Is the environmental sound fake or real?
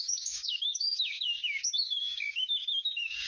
fake